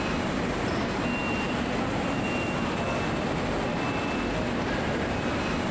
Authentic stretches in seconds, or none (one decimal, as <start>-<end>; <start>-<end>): 0.0-5.7